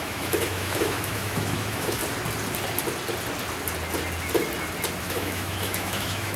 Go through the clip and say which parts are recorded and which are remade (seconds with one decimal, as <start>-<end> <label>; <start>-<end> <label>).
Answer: 0.0-2.0 remade; 2.0-5.0 recorded; 5.0-6.4 remade

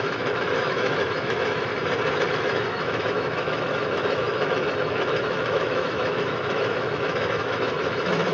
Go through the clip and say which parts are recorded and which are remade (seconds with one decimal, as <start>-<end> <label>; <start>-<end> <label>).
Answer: 0.0-1.7 remade; 1.7-2.3 recorded; 2.3-8.3 remade

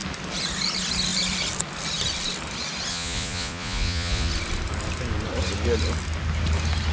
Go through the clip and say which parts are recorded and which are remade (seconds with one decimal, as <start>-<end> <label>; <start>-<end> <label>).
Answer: 0.0-2.9 recorded; 2.9-4.3 remade; 4.3-6.9 recorded